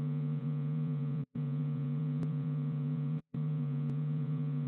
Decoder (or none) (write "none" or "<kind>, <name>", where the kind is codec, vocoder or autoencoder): vocoder, Vocos